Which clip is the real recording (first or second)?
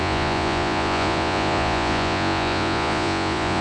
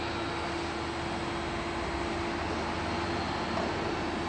second